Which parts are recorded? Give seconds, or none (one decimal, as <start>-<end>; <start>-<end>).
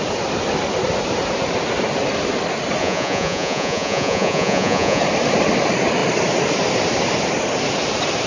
0.0-2.8; 5.0-8.3